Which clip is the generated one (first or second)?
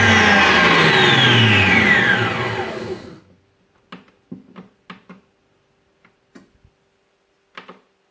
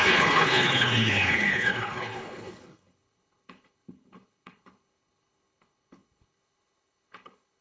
second